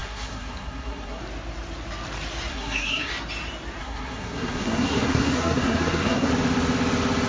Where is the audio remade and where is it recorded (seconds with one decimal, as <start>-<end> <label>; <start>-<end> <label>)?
0.0-1.2 remade; 1.2-2.5 recorded; 2.5-3.1 remade; 3.1-3.8 recorded; 3.8-6.3 remade; 6.3-7.3 recorded